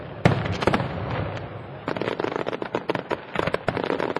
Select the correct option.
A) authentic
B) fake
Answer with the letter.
A